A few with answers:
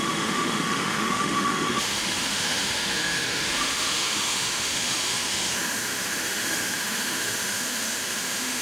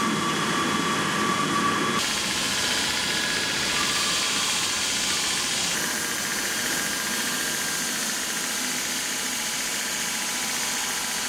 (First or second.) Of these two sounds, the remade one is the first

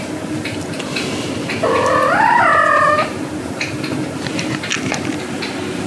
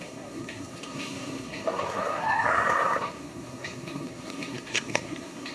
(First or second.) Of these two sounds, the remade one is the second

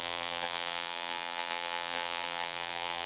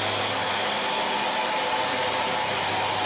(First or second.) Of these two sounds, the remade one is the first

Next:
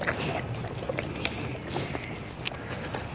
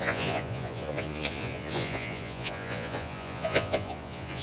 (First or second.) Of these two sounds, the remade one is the second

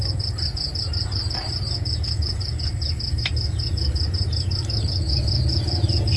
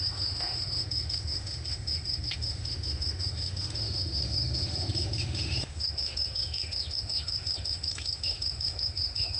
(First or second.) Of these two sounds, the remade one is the second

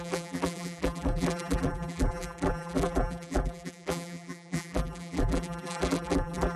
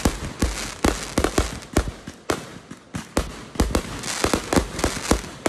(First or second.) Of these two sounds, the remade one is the first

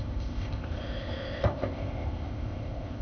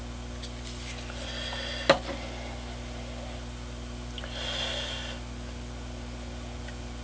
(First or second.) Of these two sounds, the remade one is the first